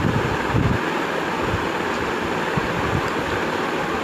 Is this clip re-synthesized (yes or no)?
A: no